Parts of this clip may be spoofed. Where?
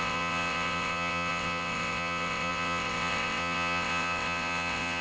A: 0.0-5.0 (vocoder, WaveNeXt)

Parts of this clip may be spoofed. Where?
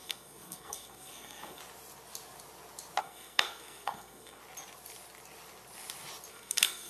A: 0.0-1.6 (codec, SNAC); 3.0-4.4; 6.3-6.9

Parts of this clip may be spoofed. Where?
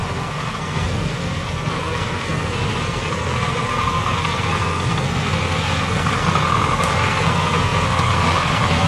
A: 0.0-8.9 (codec, SNAC)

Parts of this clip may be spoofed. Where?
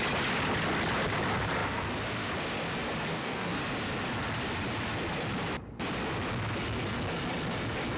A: 3.1-3.6 (codec, DAC)